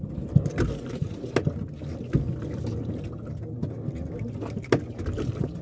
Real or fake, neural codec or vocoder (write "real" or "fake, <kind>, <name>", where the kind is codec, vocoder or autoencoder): real